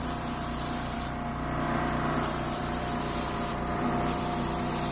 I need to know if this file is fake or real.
fake